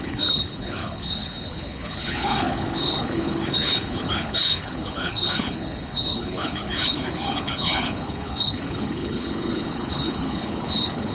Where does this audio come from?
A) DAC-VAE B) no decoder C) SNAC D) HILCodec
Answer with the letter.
D